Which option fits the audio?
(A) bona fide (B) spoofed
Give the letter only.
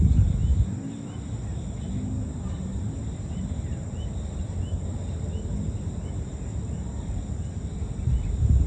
A